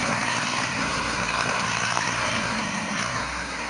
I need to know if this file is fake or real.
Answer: fake